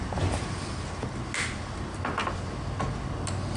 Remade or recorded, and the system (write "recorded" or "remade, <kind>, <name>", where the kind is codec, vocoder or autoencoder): recorded